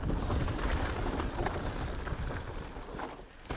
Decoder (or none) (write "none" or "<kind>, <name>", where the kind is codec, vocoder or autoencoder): none